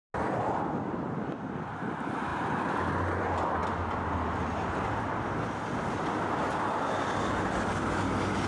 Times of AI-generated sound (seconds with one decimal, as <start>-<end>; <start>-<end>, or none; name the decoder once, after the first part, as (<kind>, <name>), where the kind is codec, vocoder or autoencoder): none